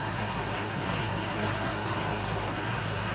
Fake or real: fake